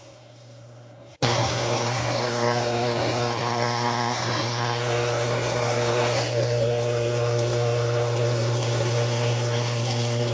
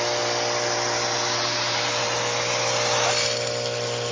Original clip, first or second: second